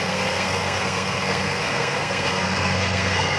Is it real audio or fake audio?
fake